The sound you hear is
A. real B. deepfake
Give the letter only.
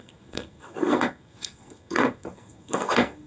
B